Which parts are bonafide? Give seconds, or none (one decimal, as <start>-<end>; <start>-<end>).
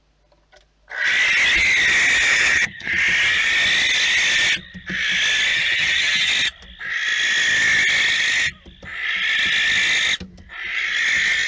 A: 0.0-2.3; 2.9-5.5; 6.3-11.5